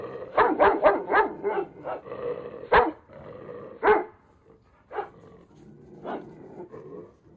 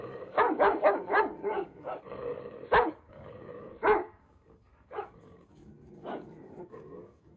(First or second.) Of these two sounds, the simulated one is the second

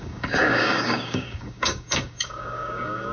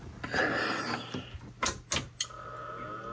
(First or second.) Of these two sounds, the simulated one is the first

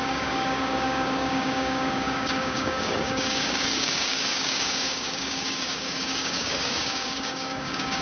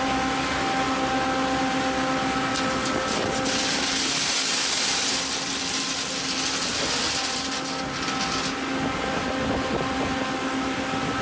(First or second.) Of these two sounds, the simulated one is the first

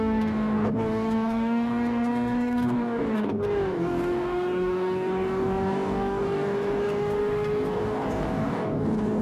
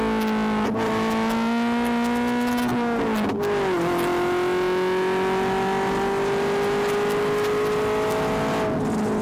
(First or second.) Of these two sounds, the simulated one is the first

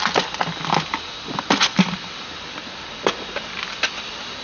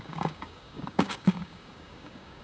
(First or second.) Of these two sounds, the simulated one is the second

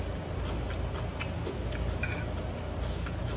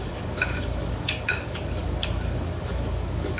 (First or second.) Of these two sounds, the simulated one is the second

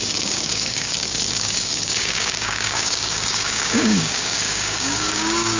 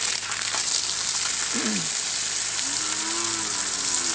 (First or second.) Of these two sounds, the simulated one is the first